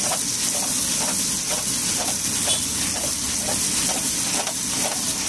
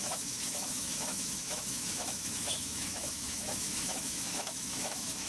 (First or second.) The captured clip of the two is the first